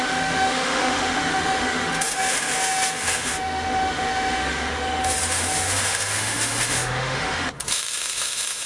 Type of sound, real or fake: fake